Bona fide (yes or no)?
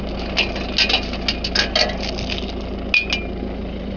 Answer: yes